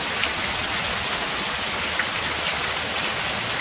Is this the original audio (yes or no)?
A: yes